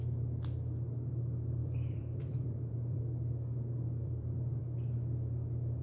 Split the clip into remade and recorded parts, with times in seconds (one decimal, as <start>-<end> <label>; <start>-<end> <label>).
0.0-1.6 recorded; 1.6-3.0 remade; 3.0-4.0 recorded; 4.0-4.6 remade; 4.6-5.8 recorded